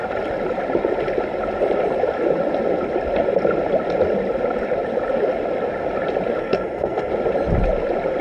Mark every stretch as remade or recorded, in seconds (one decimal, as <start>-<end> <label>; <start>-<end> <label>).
0.0-6.4 recorded; 6.4-7.1 remade; 7.1-8.2 recorded